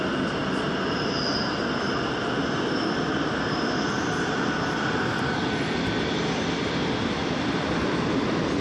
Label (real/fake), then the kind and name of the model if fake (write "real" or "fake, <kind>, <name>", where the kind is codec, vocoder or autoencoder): real